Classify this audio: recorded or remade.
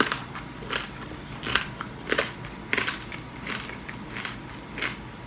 recorded